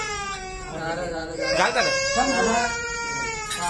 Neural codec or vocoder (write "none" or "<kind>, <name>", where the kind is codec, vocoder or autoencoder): vocoder, Vocos